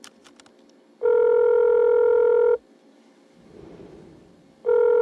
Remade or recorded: recorded